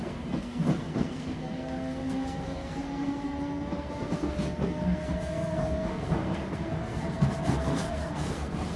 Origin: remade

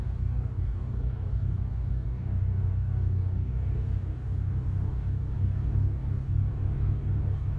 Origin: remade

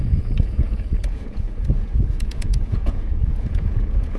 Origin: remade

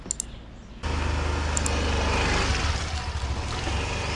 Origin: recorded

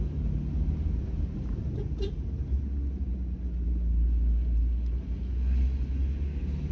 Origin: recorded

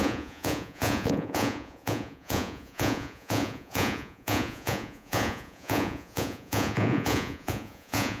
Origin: remade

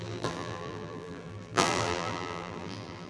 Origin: remade